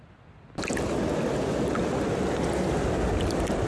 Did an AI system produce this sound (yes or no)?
no